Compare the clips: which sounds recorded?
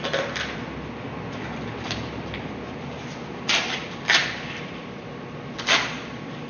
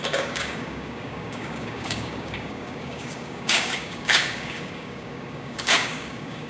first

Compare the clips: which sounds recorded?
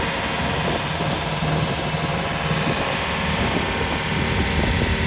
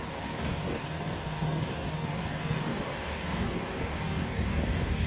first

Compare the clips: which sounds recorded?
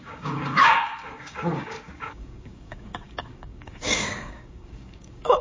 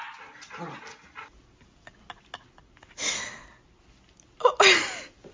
second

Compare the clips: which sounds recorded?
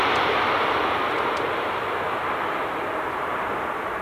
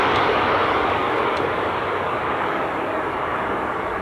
first